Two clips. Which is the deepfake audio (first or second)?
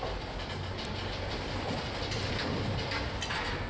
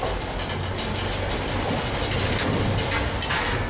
first